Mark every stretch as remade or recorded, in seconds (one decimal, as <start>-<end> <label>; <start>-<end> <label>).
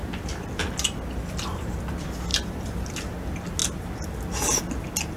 0.0-2.3 recorded; 2.3-2.9 remade; 2.9-5.2 recorded